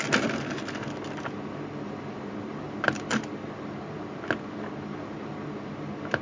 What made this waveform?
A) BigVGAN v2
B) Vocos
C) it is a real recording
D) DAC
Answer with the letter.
C